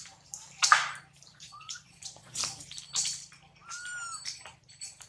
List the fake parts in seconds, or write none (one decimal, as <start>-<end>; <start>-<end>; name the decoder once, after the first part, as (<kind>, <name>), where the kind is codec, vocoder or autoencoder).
1.3-2.4 (vocoder, Vocos)